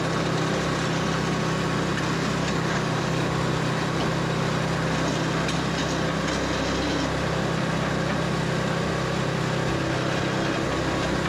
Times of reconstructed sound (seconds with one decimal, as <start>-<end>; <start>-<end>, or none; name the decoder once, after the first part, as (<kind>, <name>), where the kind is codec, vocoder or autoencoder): 2.4-3.3 (codec, DAC)